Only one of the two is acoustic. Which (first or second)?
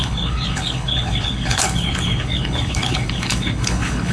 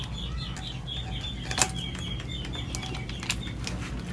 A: second